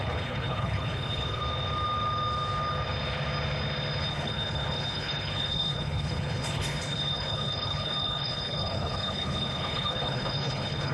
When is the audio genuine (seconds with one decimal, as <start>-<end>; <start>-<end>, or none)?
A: 1.4-4.1

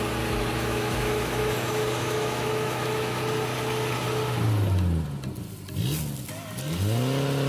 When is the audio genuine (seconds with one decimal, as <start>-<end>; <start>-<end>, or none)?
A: 0.0-0.7; 3.2-7.5

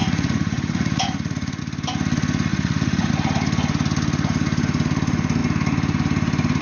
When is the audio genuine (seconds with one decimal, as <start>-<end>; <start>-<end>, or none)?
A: 1.6-2.5; 3.1-6.6

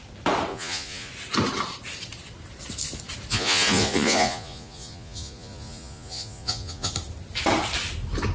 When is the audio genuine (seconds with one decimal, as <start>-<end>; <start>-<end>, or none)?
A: 0.0-0.5; 1.1-3.3; 6.9-8.3

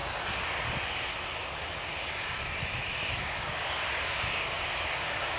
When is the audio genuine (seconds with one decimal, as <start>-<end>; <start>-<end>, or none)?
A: 0.0-3.2

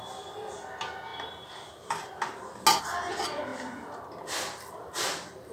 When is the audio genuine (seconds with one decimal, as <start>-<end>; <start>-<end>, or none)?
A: 0.0-5.5

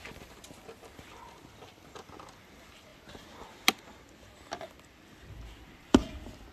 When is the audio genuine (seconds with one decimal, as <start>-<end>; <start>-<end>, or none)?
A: 0.0-6.5

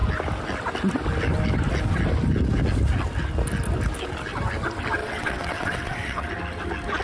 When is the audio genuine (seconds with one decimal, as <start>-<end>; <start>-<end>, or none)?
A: 0.0-5.0; 6.3-7.0